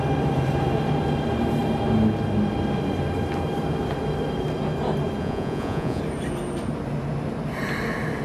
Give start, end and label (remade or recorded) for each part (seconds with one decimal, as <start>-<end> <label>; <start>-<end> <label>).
0.0-5.2 recorded; 5.2-6.0 remade; 6.0-8.2 recorded